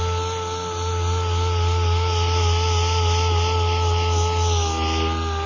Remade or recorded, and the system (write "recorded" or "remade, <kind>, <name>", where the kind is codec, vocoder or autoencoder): recorded